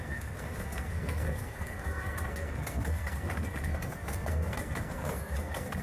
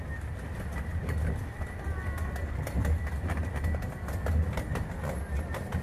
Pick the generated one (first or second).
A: first